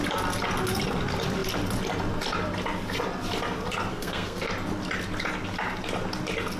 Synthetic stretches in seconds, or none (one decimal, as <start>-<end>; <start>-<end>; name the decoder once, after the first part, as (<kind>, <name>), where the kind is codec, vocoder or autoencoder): 3.9-4.5 (codec, SNAC)